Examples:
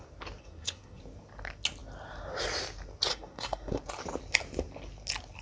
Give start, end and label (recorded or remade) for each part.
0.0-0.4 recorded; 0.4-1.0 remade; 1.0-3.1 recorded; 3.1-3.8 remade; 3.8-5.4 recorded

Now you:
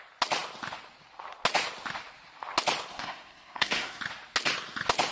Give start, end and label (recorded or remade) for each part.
0.0-2.9 recorded; 2.9-4.0 remade; 4.0-5.1 recorded

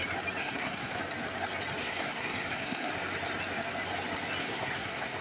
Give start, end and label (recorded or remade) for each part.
0.0-0.4 recorded; 0.4-1.0 remade; 1.0-1.8 recorded; 1.8-2.9 remade; 2.9-4.4 recorded; 4.4-5.2 remade

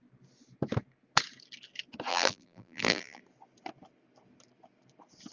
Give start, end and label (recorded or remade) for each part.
0.0-2.1 recorded; 2.1-3.2 remade; 3.2-5.3 recorded

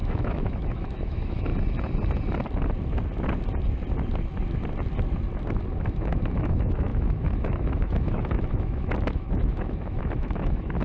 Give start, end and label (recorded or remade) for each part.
0.0-1.5 remade; 1.5-5.9 recorded; 5.9-10.8 remade